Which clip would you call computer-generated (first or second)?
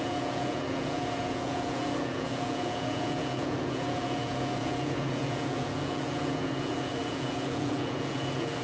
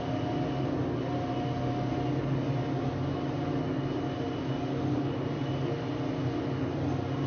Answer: first